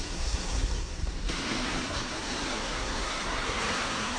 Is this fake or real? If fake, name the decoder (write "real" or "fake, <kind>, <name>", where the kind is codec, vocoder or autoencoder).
fake, codec, SNAC